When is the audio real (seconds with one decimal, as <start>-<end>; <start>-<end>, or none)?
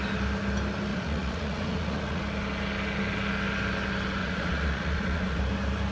0.0-0.9; 2.2-4.2; 5.4-5.9